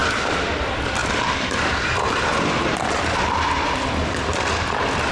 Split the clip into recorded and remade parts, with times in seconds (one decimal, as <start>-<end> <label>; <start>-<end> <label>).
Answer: 0.0-5.1 recorded

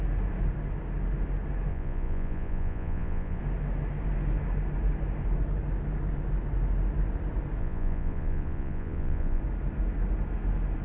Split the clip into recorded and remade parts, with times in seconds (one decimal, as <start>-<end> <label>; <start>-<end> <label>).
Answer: 0.0-1.7 recorded; 1.7-3.4 remade; 3.4-7.6 recorded; 7.6-9.4 remade; 9.4-10.8 recorded

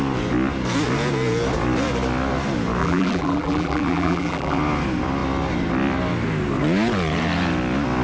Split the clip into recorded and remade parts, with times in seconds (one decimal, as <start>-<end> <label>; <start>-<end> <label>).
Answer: 0.0-2.8 recorded; 2.8-4.6 remade; 4.6-8.0 recorded

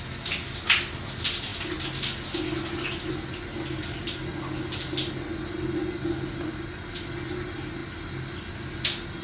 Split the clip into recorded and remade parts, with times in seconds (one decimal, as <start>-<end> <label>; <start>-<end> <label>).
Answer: 0.0-9.2 recorded

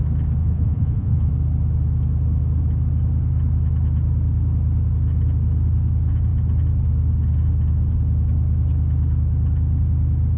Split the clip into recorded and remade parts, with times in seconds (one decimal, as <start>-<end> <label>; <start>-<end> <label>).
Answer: 0.0-0.4 recorded; 0.4-1.3 remade; 1.3-10.4 recorded

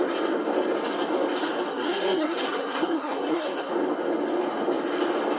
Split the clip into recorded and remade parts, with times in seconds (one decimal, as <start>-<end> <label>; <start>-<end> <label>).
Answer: 0.0-1.7 recorded; 1.7-3.7 remade; 3.7-5.4 recorded

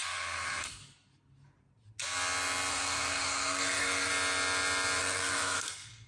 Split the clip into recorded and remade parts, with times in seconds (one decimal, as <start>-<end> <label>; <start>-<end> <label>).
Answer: 0.0-0.8 remade; 0.8-2.7 recorded; 2.7-4.1 remade; 4.1-5.0 recorded; 5.0-6.1 remade

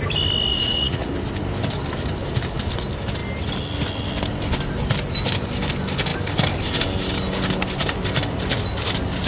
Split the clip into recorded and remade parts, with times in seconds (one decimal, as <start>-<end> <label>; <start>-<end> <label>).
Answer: 0.0-0.5 recorded; 0.5-1.1 remade; 1.1-9.3 recorded